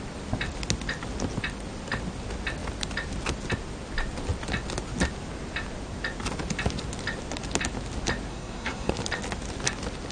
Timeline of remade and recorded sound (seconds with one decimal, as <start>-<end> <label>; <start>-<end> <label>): 0.0-8.3 recorded; 8.3-8.9 remade; 8.9-10.1 recorded